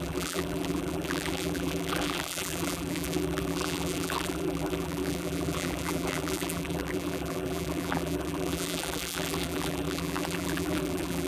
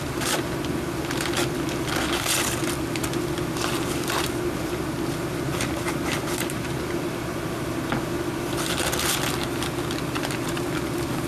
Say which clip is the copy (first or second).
first